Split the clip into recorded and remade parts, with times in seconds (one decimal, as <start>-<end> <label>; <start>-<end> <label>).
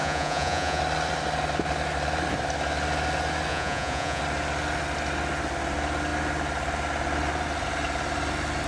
0.0-0.8 remade; 0.8-3.5 recorded; 3.5-4.2 remade; 4.2-8.7 recorded